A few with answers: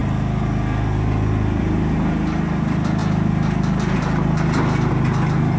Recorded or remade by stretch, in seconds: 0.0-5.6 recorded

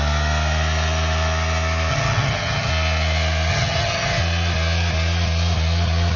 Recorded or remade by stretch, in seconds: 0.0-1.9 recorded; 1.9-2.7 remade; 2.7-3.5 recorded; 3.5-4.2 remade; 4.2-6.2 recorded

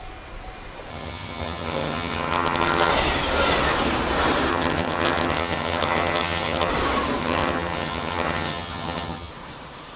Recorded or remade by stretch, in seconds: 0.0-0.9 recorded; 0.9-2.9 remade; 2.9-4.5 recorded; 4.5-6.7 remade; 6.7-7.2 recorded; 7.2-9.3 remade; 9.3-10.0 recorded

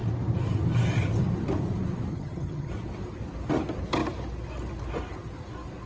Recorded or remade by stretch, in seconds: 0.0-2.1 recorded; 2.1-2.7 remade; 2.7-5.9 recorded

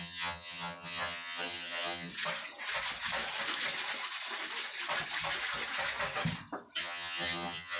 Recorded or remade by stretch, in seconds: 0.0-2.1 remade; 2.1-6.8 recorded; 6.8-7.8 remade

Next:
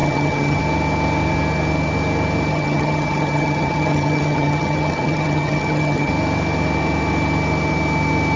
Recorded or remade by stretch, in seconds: 0.0-0.6 remade; 0.6-2.5 recorded; 2.5-6.1 remade; 6.1-8.4 recorded